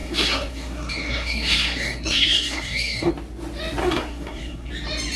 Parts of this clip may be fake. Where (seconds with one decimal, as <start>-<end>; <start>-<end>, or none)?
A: 0.0-3.1; 3.8-4.7